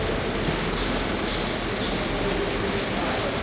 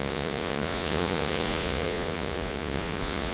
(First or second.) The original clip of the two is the first